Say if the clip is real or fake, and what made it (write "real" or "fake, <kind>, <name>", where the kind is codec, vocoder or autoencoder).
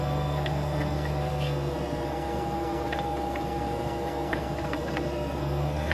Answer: fake, codec, SNAC